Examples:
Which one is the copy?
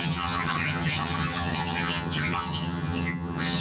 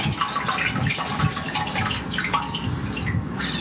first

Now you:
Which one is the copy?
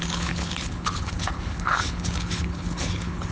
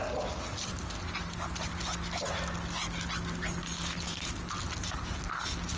first